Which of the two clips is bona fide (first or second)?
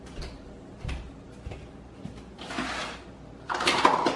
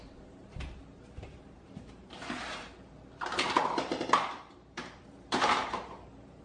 first